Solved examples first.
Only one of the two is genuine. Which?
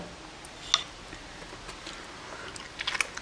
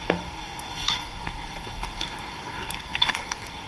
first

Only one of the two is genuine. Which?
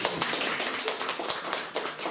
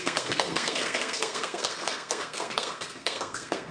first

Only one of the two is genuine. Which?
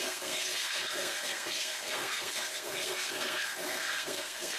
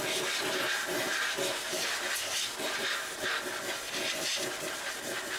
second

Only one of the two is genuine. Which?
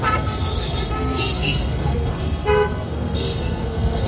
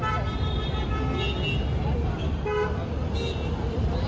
second